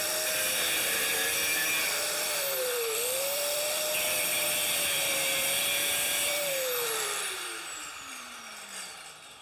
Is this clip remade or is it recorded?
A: remade